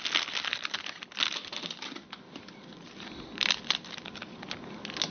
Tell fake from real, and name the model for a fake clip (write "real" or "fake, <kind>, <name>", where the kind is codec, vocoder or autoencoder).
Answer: real